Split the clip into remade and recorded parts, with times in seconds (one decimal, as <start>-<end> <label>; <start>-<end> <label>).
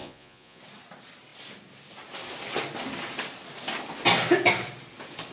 0.0-0.6 remade; 0.6-5.3 recorded